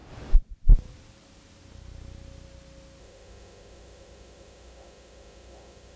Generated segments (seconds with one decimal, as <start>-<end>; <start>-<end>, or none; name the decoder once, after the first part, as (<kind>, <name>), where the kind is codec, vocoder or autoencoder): 3.0-6.0 (autoencoder, DAC-VAE)